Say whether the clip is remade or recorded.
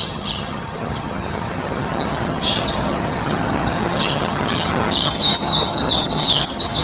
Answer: remade